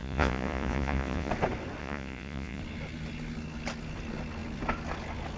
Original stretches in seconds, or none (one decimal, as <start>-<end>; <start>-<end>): 1.3-1.8; 2.6-5.4